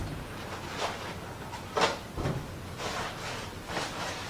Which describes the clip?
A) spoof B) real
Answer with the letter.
B